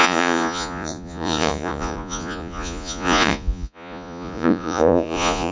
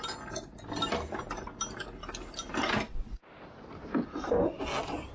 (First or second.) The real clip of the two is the second